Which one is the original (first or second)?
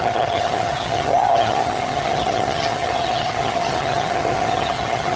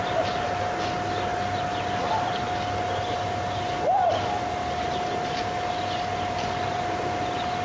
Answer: second